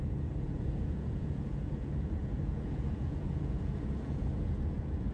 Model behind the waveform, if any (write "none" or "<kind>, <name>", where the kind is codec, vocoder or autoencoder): vocoder, Vocos